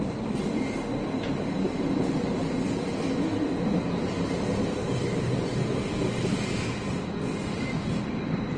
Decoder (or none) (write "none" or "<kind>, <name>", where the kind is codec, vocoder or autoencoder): none